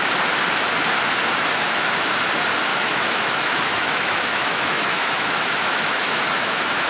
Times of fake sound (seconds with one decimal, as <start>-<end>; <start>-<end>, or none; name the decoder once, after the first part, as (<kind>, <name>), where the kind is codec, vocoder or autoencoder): 2.7-6.9 (autoencoder, DAC-VAE)